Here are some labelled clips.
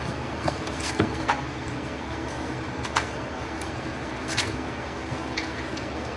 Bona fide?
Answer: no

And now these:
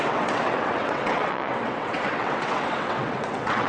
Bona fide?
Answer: no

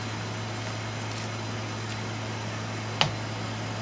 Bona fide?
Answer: yes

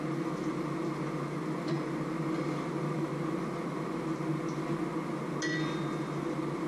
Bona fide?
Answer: yes